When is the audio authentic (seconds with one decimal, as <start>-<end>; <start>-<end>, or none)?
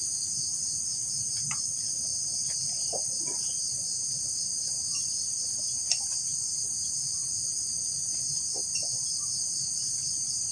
0.0-2.1; 6.5-8.7